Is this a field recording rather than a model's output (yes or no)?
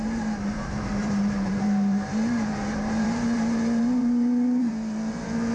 no